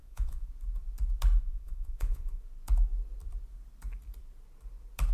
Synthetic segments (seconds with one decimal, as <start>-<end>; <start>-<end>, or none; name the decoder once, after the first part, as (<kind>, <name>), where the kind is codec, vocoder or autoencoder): 0.0-0.5 (vocoder, Vocos); 1.4-2.4